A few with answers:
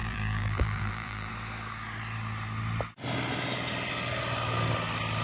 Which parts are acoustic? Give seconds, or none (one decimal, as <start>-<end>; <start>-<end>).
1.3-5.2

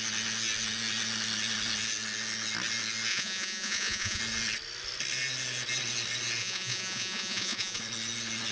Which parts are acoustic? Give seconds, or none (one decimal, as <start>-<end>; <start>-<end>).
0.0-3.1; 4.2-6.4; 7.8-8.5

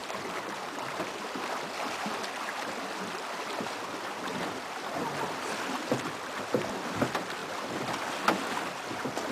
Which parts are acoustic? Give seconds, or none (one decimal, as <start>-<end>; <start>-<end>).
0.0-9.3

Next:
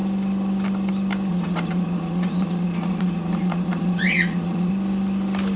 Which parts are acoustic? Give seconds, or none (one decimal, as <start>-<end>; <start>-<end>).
0.0-1.3; 4.7-5.6